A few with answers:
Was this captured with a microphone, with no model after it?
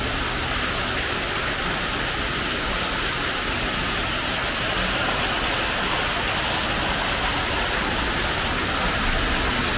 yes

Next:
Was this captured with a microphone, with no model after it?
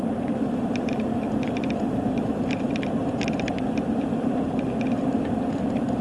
no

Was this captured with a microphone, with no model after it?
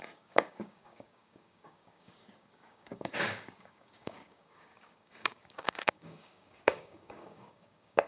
no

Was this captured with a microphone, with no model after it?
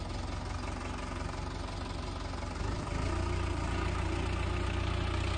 yes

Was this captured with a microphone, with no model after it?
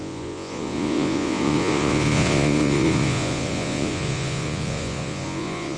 no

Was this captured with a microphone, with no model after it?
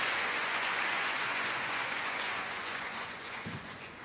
no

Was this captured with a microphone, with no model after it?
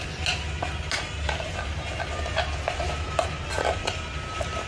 yes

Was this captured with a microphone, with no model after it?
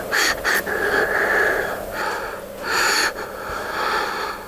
yes